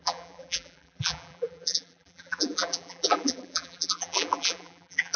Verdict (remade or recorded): remade